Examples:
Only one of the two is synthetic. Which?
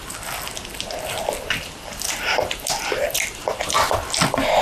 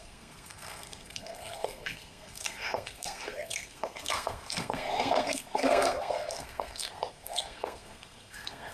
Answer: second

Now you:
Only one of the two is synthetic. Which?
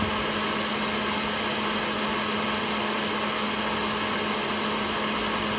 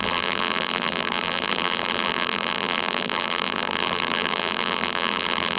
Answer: second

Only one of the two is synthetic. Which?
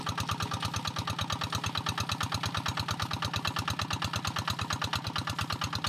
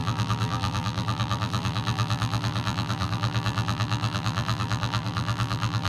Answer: second